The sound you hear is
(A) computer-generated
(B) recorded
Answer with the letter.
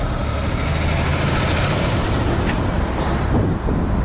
B